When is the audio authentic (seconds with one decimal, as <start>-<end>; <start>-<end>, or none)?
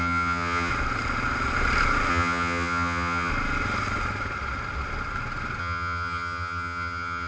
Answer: 0.7-2.1; 3.3-5.6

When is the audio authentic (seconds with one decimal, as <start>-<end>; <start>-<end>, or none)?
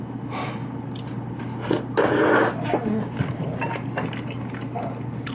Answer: 0.0-5.3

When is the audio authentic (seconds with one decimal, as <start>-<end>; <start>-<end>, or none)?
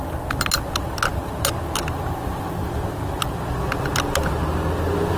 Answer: 0.0-5.2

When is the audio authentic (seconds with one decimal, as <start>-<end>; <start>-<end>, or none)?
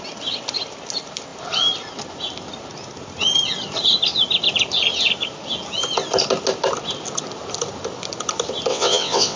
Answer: 0.0-8.7